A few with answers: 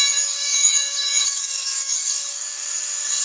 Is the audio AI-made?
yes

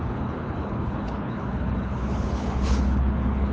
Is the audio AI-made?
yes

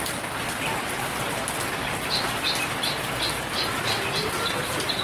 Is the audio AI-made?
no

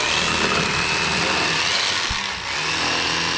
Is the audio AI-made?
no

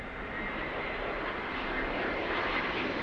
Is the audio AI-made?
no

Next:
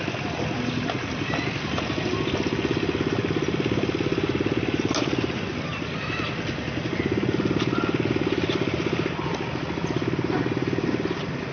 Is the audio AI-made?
no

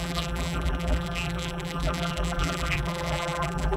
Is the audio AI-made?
yes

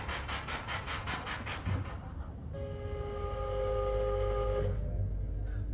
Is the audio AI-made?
no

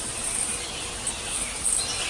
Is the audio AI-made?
no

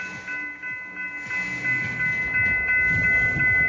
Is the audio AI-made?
no